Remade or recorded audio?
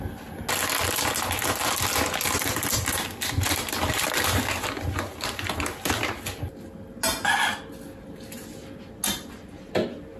recorded